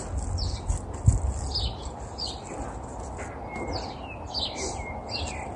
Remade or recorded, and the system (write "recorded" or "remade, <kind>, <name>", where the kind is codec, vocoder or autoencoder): recorded